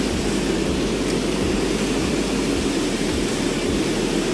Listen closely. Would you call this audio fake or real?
real